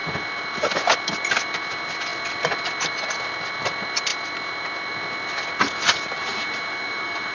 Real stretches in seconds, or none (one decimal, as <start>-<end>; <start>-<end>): 0.0-7.3